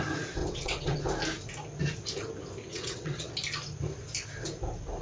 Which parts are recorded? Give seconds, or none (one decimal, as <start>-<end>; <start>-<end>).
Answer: 0.0-0.4; 1.0-2.7; 3.3-5.0